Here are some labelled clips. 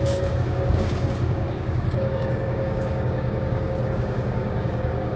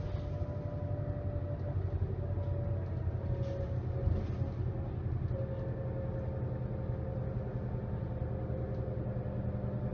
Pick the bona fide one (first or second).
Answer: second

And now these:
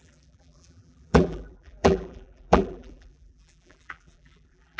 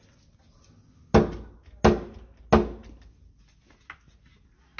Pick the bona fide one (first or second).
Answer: second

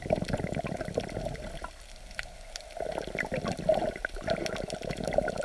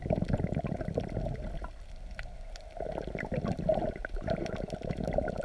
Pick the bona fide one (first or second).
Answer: first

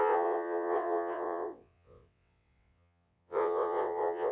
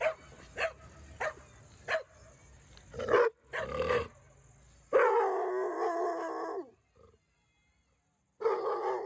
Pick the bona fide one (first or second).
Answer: second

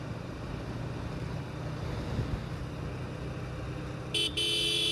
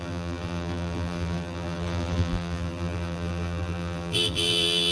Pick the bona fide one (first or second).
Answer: first